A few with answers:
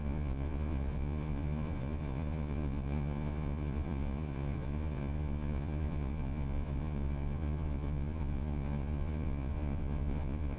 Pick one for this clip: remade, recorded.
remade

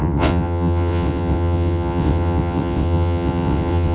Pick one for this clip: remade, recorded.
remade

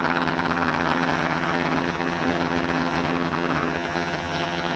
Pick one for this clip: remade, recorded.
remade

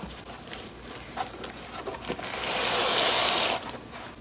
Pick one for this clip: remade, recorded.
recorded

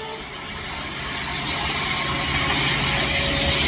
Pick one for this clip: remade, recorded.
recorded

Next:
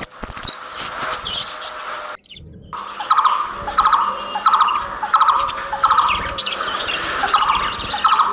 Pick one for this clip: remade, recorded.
recorded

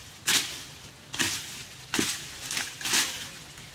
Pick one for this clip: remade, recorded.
recorded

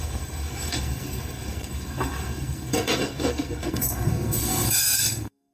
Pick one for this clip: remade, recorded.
remade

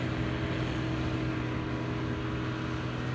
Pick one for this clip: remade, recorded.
recorded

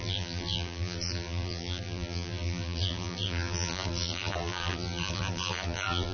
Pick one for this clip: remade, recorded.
remade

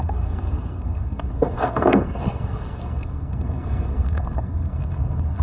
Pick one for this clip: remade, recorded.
remade